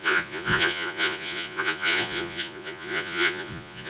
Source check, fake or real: fake